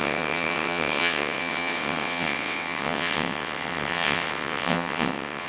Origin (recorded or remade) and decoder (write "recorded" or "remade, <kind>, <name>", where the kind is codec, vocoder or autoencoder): remade, vocoder, WaveNeXt